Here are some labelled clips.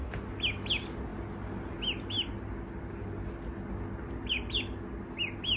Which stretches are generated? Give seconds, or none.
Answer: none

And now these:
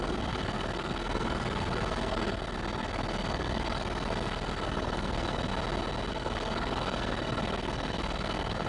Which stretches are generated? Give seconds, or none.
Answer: 0.0-5.5 (codec, SNAC); 6.1-8.7